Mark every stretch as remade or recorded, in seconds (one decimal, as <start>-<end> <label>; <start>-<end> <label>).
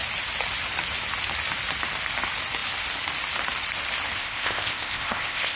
0.0-4.2 recorded; 4.2-5.6 remade